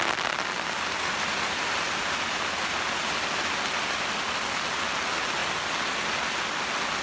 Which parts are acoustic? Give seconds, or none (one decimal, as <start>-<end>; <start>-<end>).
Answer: 0.0-7.0